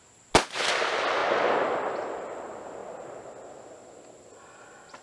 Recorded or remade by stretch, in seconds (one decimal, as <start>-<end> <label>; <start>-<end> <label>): 0.0-5.0 recorded